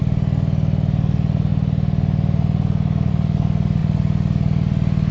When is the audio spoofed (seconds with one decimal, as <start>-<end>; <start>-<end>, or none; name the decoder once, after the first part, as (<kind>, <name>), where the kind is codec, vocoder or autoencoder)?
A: none

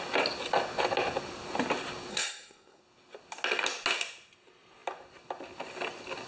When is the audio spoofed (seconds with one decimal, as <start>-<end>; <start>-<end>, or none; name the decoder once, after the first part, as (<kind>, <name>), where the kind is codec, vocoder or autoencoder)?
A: 2.1-2.8 (codec, SNAC)

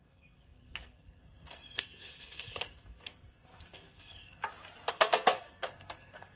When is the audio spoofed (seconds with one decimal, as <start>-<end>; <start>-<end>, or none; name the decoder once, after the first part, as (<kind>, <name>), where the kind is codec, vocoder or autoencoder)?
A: 0.0-4.4 (codec, SNAC); 4.9-6.4

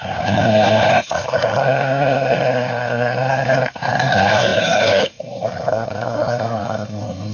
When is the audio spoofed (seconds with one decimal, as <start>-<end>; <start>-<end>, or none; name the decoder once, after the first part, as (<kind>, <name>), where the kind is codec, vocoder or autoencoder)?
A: 0.0-7.3 (codec, SNAC)

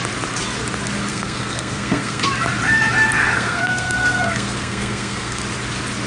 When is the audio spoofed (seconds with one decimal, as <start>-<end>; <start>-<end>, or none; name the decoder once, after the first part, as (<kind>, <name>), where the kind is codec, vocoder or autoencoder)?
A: 1.1-2.3 (codec, SNAC); 3.2-5.4

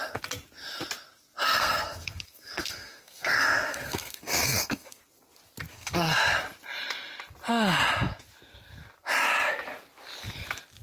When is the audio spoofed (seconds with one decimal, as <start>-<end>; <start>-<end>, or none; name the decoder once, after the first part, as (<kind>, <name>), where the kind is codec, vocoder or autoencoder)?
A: 1.4-5.0 (codec, SNAC); 5.7-6.3

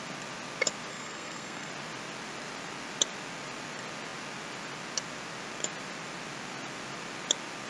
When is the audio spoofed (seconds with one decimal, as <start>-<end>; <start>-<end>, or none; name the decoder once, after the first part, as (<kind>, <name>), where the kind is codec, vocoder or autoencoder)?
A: 0.9-1.7 (codec, SNAC)